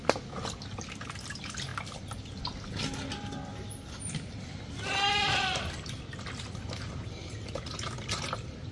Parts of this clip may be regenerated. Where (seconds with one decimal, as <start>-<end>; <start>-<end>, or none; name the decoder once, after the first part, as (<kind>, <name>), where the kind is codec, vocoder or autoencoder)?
1.7-2.4 (vocoder, BigVGAN v2)